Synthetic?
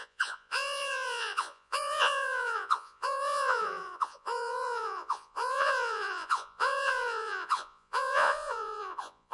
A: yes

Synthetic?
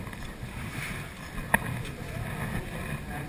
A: no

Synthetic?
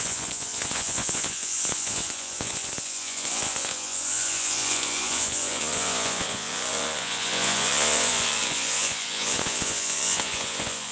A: yes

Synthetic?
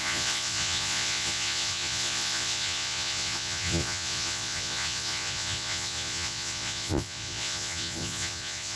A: yes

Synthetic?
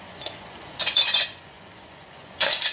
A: yes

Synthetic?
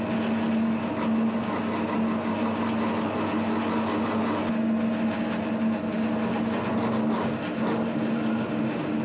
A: no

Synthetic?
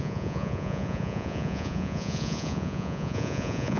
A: yes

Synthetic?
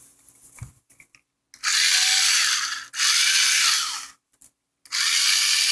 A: no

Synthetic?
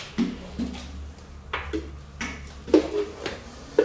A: no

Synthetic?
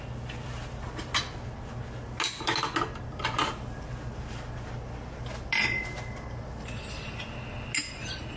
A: no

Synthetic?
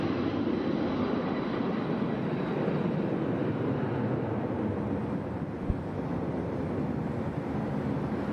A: no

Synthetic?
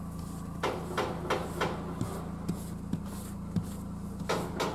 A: no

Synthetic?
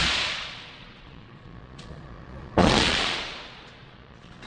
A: yes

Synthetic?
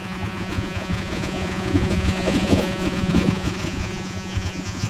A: yes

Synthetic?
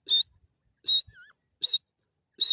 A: no